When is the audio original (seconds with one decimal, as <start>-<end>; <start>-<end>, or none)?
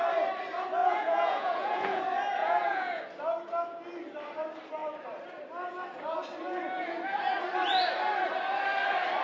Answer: 0.0-0.8; 2.0-2.4; 3.0-9.2